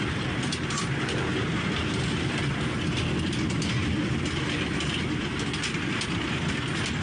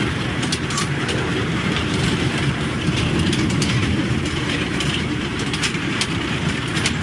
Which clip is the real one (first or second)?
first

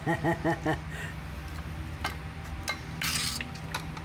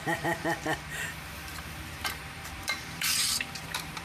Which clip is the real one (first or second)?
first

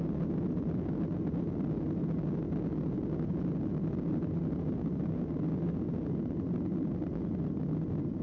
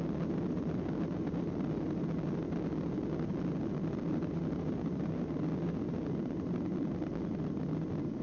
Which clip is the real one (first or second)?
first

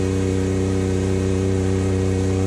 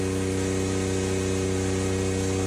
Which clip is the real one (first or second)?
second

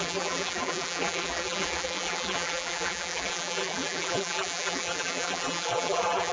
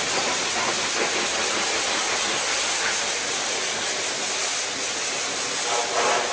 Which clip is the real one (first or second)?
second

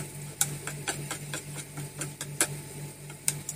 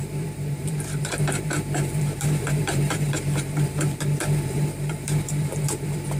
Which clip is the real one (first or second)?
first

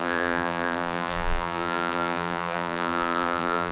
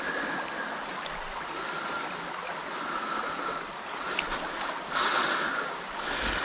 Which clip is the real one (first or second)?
second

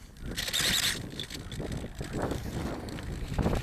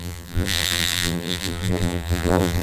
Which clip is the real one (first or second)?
first